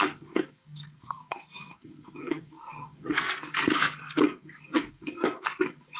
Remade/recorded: remade